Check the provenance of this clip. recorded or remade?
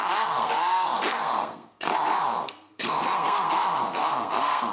remade